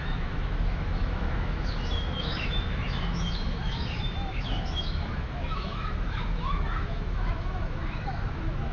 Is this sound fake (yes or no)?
yes